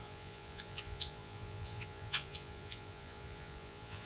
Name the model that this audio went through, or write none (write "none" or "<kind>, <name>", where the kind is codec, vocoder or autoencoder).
vocoder, Vocos